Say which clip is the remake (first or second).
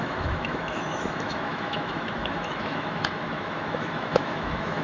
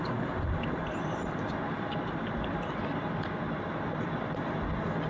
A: first